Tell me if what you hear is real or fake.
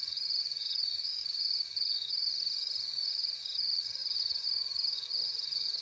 fake